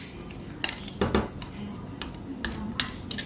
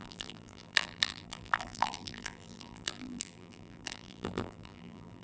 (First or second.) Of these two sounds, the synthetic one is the second